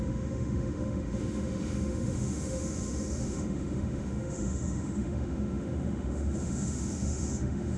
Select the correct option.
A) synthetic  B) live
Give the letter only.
A